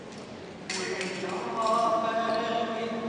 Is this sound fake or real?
real